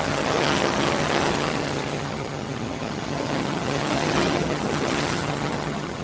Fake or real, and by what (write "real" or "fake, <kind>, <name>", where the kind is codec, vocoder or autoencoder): fake, vocoder, HiFi-GAN